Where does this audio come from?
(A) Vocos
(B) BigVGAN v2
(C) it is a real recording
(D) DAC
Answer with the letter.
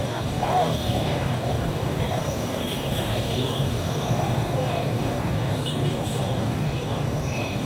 D